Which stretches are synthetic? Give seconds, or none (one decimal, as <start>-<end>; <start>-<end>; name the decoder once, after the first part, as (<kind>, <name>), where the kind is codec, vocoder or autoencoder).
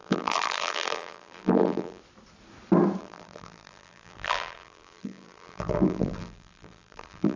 0.0-2.0 (vocoder, BigVGAN v2); 3.0-7.4